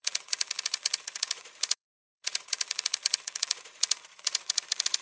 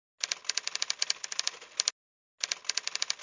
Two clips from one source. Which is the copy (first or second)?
first